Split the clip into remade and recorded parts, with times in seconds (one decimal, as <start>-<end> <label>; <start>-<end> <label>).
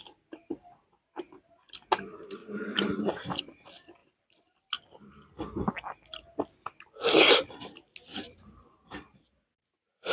0.0-2.4 recorded; 2.4-3.4 remade; 3.4-4.0 recorded; 4.0-4.8 remade; 4.8-8.1 recorded; 8.1-9.3 remade; 9.3-10.1 recorded